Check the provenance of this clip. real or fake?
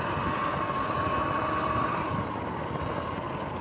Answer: real